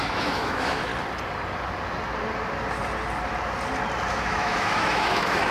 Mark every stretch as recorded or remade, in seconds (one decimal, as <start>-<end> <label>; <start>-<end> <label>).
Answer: 0.0-0.9 remade; 0.9-4.1 recorded; 4.1-5.5 remade